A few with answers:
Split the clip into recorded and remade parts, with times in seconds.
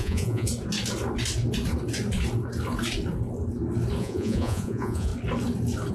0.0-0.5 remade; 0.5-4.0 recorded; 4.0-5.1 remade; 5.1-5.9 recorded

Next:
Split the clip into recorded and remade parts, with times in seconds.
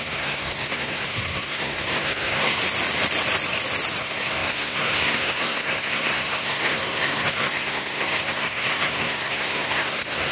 0.0-2.6 remade; 2.6-4.0 recorded; 4.0-10.3 remade